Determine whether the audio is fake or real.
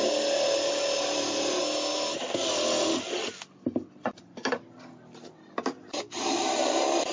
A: real